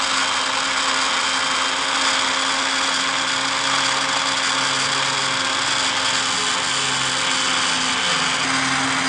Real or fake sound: real